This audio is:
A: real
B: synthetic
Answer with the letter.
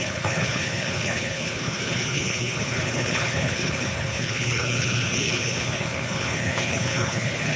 B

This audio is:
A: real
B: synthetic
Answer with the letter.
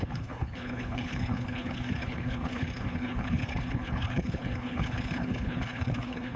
B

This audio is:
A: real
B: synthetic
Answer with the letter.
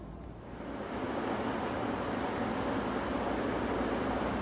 A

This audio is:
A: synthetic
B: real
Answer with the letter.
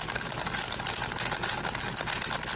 B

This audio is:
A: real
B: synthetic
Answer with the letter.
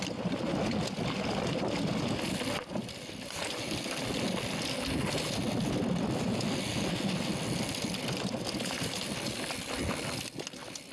A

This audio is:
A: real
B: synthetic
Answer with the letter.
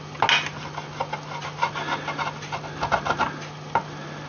A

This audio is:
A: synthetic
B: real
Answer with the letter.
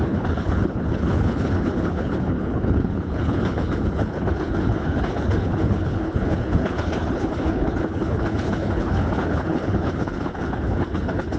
A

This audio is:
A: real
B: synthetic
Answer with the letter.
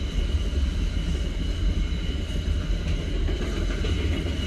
A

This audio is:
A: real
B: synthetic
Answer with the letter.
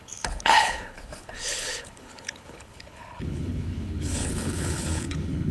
B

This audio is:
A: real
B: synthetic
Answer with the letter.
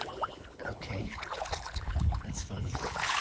B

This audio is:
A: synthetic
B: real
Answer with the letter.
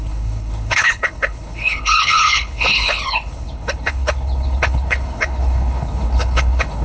A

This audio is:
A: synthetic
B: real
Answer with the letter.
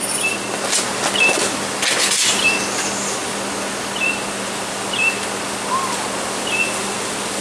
B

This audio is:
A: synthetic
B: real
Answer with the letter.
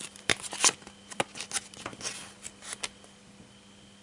B